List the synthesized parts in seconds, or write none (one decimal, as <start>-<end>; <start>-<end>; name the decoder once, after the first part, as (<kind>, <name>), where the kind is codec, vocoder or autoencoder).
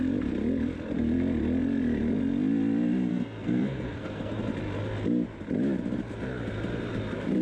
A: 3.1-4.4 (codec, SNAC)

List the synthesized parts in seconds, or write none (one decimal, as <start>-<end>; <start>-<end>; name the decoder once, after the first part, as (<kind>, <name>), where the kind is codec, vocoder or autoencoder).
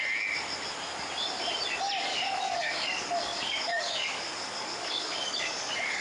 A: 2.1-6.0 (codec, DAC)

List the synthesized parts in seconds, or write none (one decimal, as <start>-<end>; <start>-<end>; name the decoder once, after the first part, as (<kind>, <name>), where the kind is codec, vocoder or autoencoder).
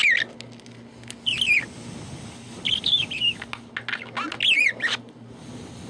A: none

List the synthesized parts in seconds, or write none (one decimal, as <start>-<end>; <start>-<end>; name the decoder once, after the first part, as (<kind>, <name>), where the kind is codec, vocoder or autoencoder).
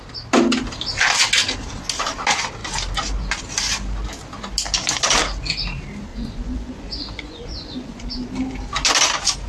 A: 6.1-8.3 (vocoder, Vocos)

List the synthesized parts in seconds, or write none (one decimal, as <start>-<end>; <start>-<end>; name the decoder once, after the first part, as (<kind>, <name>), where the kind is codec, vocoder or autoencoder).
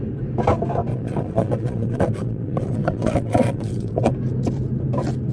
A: 0.9-4.1 (vocoder, Vocos)